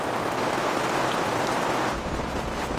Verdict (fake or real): real